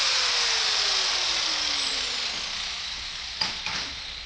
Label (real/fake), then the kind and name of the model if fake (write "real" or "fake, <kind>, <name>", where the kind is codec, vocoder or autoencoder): real